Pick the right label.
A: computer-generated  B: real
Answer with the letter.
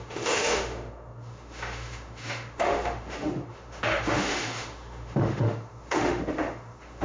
A